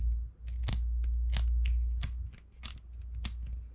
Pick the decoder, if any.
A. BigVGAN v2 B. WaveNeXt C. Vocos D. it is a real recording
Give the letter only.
D